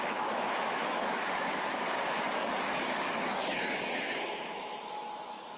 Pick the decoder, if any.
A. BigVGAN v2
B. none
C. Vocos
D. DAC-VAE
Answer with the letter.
D